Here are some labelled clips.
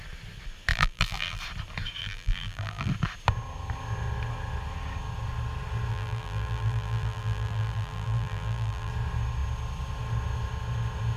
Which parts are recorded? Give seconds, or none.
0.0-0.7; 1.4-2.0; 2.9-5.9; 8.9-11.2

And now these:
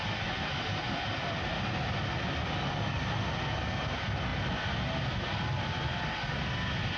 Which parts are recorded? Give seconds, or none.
0.0-7.0

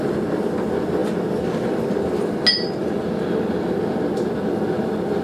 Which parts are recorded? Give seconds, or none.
0.0-5.2

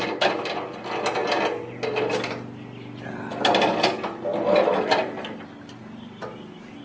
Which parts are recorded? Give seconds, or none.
0.0-6.8

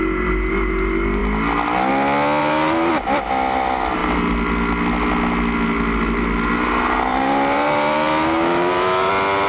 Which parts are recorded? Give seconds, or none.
0.0-2.4; 2.9-7.1; 9.1-9.5

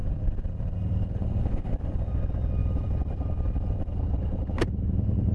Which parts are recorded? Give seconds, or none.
2.1-2.6; 4.0-5.3

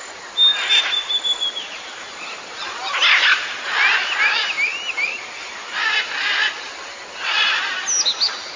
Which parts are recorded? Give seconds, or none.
0.0-8.6

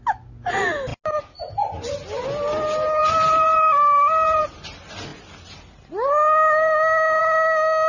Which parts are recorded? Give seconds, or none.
0.0-3.0; 4.4-7.9